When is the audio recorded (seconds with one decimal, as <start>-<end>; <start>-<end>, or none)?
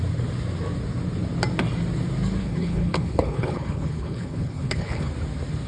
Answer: 0.0-2.4; 5.1-5.7